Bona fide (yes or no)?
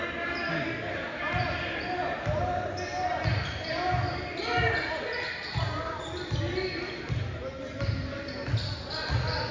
yes